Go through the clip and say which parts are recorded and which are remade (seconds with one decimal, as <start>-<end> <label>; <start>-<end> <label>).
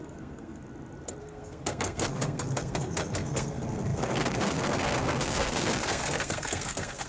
0.0-0.6 remade; 0.6-1.2 recorded; 1.2-7.1 remade